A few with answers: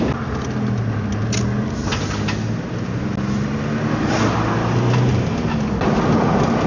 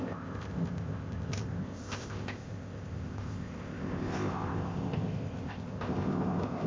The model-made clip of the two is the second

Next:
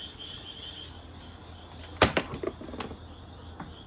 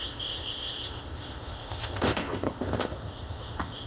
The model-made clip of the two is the second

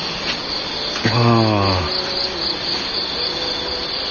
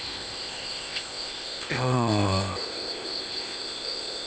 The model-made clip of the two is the second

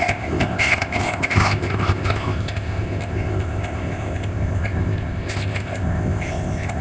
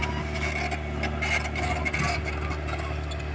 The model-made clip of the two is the first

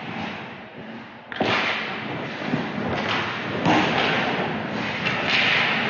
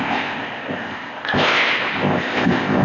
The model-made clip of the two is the second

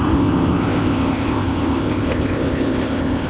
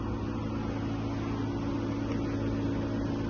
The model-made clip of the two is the first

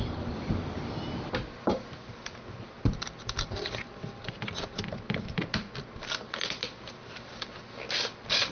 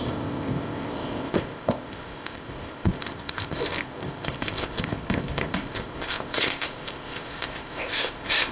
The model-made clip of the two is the second